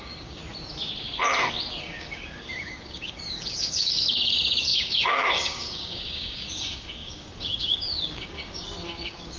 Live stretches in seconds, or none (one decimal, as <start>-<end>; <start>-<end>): 0.4-1.8